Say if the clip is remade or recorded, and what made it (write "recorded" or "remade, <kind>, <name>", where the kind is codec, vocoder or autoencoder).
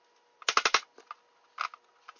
recorded